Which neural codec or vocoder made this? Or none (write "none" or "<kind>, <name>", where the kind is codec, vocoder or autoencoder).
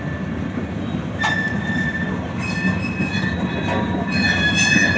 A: none